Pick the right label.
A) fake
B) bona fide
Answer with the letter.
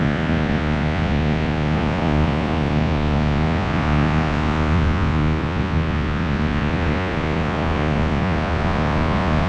A